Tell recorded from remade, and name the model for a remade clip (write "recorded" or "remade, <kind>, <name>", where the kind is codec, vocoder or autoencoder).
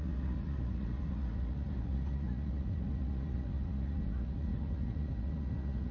remade, vocoder, Vocos